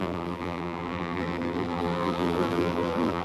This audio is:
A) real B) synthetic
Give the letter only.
B